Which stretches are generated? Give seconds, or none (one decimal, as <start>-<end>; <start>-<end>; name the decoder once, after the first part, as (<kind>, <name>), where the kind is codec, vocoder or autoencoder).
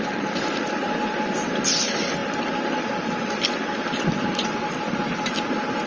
0.0-5.9 (vocoder, BigVGAN v2)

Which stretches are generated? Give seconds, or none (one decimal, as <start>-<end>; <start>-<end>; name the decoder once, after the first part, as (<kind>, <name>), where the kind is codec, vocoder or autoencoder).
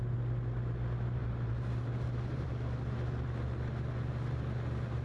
1.2-2.5 (vocoder, BigVGAN v2)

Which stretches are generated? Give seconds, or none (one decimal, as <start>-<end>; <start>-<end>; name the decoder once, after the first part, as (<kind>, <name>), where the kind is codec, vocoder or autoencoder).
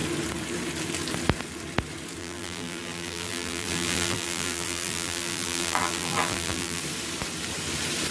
2.2-6.8 (vocoder, BigVGAN v2)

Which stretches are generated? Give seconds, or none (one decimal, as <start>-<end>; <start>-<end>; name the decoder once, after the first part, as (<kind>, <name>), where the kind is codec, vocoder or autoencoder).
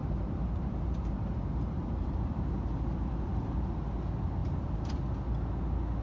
0.0-3.6 (vocoder, BigVGAN v2); 4.4-4.9